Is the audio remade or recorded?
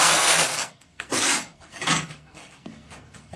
remade